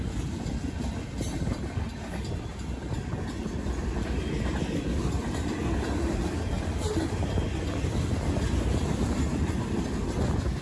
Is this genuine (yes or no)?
no